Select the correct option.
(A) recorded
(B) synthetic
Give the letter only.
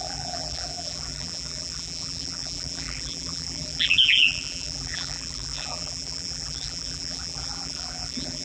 B